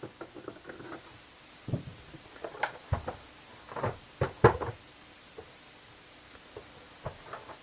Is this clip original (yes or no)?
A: yes